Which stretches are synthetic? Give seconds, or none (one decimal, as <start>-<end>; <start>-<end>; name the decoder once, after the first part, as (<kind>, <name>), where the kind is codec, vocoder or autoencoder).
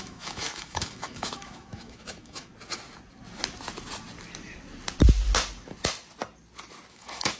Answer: 0.0-2.5 (autoencoder, DAC-VAE); 6.9-7.4